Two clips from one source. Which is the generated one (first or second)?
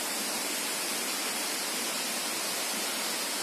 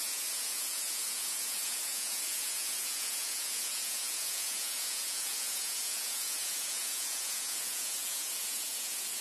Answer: second